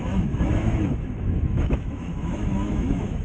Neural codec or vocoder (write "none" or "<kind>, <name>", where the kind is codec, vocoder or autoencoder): autoencoder, DAC-VAE